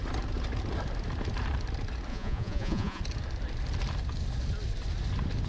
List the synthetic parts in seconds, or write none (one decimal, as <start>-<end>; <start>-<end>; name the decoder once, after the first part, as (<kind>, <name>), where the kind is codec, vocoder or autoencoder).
2.1-3.0 (vocoder, Vocos)